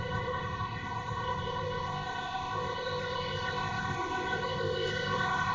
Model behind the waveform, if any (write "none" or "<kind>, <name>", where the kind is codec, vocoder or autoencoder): codec, ZipCodec